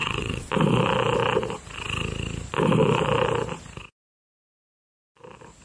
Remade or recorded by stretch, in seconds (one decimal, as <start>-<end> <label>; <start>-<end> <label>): 0.0-0.5 remade; 0.5-5.6 recorded